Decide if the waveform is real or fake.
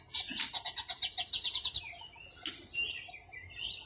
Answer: real